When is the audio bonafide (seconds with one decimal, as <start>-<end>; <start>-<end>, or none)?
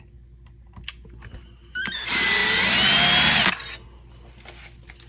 0.0-5.1